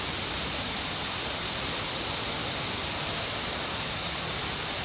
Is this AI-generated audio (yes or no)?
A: no